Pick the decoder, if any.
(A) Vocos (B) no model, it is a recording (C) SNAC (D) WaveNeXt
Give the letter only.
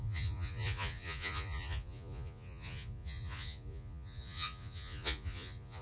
A